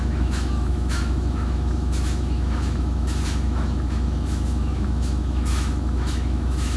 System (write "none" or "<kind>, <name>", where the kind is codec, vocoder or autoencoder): autoencoder, DAC-VAE